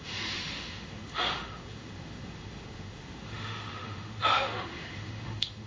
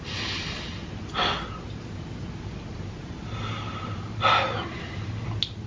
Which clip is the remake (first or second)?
first